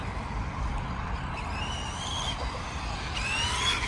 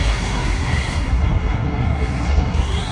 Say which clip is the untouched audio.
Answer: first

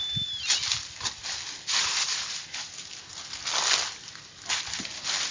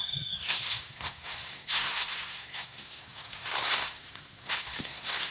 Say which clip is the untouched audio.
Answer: first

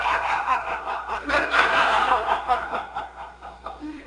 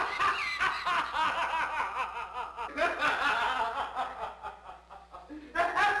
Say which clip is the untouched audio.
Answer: second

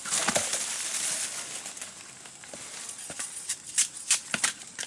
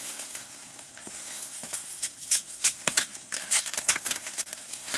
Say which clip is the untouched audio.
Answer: first